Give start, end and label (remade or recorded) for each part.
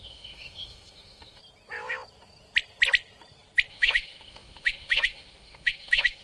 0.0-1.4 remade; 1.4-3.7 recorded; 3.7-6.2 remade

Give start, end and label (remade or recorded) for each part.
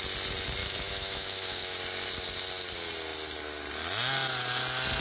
0.0-0.6 recorded; 0.6-1.8 remade; 1.8-5.0 recorded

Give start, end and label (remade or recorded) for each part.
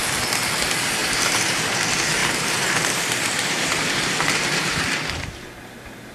0.0-1.0 recorded; 1.0-1.6 remade; 1.6-2.2 recorded; 2.2-6.1 remade